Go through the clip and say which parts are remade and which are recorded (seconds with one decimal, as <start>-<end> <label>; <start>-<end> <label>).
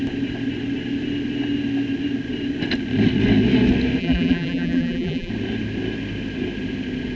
0.0-4.0 recorded; 4.0-5.3 remade; 5.3-7.2 recorded